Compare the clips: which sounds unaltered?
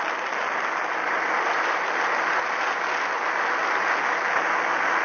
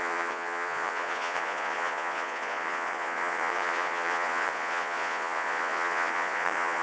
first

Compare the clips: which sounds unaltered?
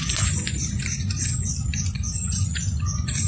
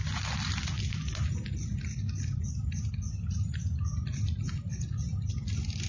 second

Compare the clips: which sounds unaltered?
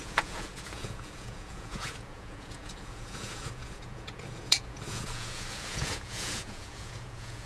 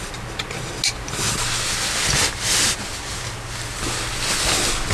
second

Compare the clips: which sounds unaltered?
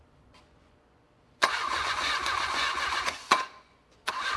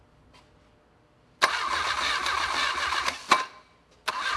second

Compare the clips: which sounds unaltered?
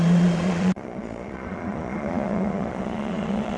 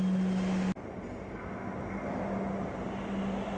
second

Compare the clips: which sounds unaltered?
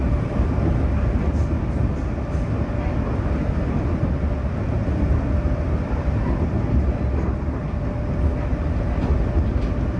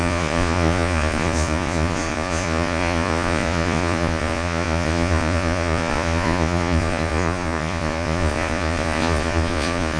first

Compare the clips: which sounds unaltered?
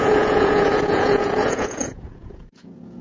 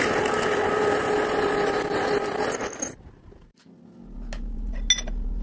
second